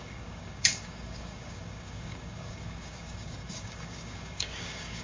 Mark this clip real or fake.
fake